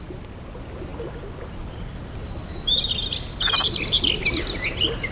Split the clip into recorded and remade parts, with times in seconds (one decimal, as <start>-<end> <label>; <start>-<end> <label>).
0.0-5.1 recorded